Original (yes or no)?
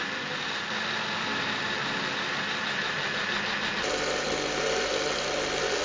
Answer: yes